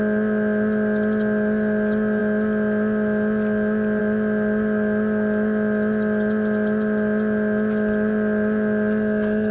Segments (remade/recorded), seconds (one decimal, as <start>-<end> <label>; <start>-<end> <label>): 0.0-9.5 recorded

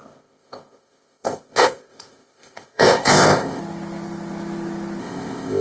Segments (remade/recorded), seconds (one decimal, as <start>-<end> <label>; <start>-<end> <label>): 0.0-3.6 remade; 3.6-5.0 recorded; 5.0-5.6 remade

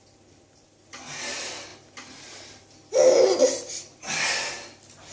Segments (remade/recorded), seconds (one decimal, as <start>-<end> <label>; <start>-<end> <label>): 0.0-5.1 recorded